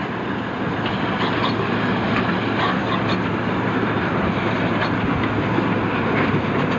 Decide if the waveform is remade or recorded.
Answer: recorded